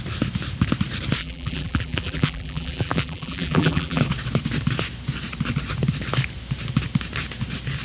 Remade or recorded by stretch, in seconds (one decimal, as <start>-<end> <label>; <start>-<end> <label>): 0.0-1.2 recorded; 1.2-4.0 remade; 4.0-7.8 recorded